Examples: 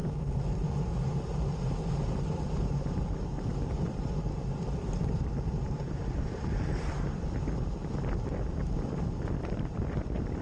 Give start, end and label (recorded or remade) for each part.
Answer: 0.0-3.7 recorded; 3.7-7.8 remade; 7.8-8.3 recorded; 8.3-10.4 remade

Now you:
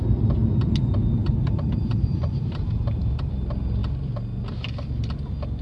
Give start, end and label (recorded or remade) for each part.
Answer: 0.0-1.2 recorded; 1.2-3.3 remade; 3.3-5.6 recorded

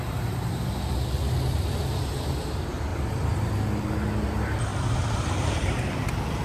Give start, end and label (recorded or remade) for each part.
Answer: 0.0-2.9 recorded; 2.9-3.5 remade; 3.5-4.7 recorded; 4.7-5.9 remade; 5.9-6.4 recorded

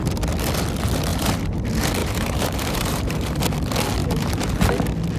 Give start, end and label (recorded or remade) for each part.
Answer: 0.0-1.1 recorded; 1.1-1.6 remade; 1.6-2.0 recorded; 2.0-3.4 remade; 3.4-4.0 recorded; 4.0-4.6 remade; 4.6-5.2 recorded